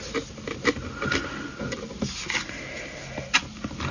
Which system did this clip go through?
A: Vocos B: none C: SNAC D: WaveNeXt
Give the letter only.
B